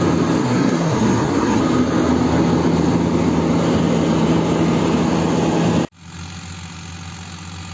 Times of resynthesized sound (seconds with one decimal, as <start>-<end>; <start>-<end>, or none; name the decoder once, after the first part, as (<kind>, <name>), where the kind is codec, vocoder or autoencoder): 0.4-1.6 (codec, SNAC)